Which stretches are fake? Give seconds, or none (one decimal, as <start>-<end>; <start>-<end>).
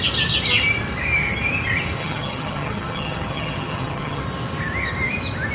2.0-4.2